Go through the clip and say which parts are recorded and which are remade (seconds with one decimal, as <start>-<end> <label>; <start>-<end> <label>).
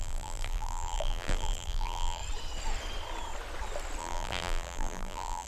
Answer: 0.0-2.2 remade; 2.2-4.0 recorded; 4.0-5.5 remade